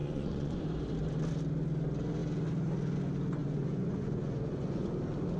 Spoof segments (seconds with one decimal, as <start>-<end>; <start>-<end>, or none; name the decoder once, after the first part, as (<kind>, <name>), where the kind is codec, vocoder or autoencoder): 0.0-0.6 (vocoder, Vocos); 3.4-4.9